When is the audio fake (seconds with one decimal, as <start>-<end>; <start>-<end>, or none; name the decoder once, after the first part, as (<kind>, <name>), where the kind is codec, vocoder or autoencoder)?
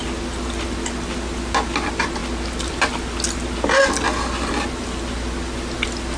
none